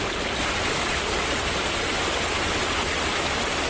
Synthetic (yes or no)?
no